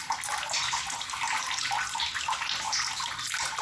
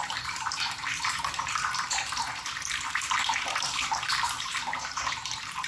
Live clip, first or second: first